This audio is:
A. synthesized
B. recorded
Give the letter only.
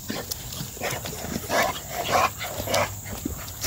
B